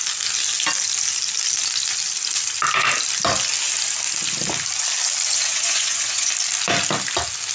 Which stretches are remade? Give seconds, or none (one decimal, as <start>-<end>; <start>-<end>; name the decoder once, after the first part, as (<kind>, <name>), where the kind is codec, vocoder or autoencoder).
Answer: 5.5-6.3 (vocoder, Vocos)